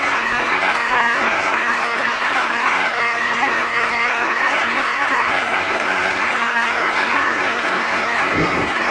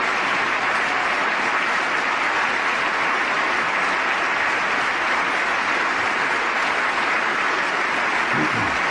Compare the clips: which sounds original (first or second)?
second